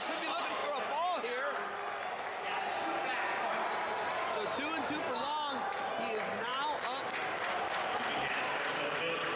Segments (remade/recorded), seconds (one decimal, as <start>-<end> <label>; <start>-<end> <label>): 0.0-9.4 recorded